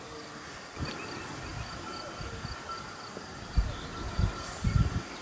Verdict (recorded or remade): recorded